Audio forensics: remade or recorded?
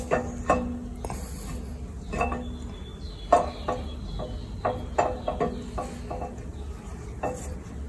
recorded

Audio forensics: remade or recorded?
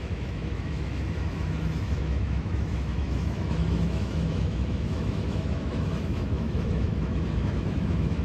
remade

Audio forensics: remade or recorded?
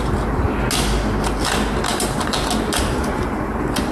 recorded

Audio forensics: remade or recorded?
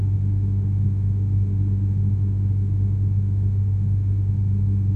remade